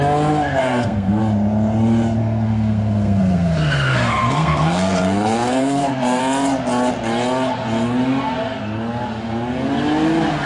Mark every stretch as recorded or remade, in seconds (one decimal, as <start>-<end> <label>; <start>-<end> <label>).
0.0-0.6 recorded; 0.6-1.2 remade; 1.2-2.2 recorded; 2.2-6.2 remade; 6.2-10.5 recorded